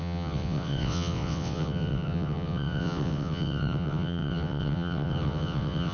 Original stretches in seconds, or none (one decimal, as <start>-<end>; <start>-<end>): none